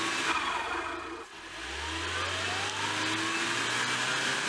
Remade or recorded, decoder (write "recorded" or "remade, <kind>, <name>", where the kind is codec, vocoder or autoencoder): recorded